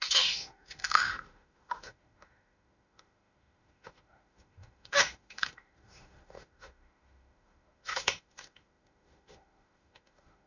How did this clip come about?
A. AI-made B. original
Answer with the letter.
A